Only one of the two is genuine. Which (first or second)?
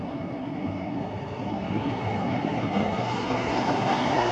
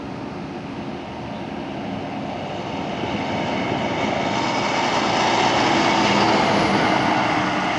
second